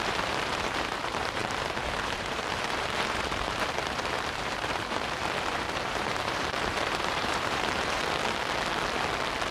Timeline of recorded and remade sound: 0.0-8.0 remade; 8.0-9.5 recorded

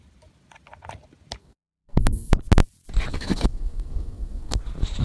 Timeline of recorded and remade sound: 0.0-1.4 recorded; 1.4-2.3 remade; 2.3-3.1 recorded; 3.1-4.6 remade; 4.6-5.0 recorded

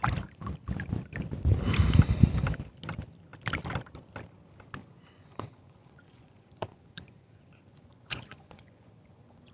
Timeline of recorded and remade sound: 0.0-4.8 recorded; 4.8-9.5 remade

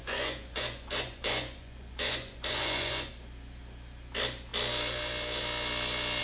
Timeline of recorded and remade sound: 0.0-3.1 remade; 3.1-6.2 recorded

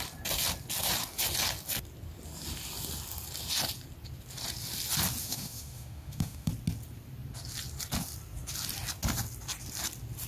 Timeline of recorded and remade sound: 0.0-5.2 recorded; 5.2-6.5 remade; 6.5-10.3 recorded

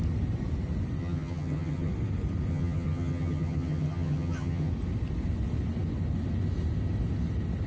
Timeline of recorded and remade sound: 0.0-1.0 recorded; 1.0-1.9 remade; 1.9-2.5 recorded; 2.5-4.7 remade; 4.7-7.7 recorded